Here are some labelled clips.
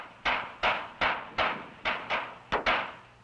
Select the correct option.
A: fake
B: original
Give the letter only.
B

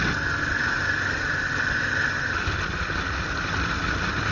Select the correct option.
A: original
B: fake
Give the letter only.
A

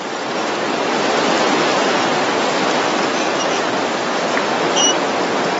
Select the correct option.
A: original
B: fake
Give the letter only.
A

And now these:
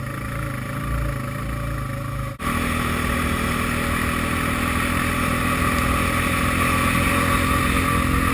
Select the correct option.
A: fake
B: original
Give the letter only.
B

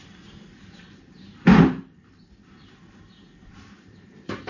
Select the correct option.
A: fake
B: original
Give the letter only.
A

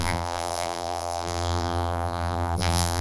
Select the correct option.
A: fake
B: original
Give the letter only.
A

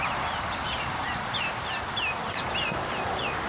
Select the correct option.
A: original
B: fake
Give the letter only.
B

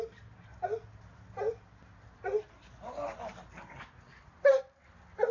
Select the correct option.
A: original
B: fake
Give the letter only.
A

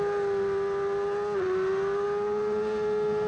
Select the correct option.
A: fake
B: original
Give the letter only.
B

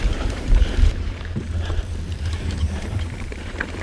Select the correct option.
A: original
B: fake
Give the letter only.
B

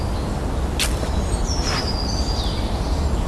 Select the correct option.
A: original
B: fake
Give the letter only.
A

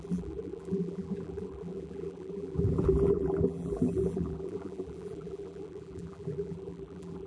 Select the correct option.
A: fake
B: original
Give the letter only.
A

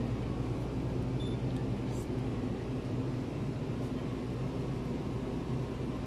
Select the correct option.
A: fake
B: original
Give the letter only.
B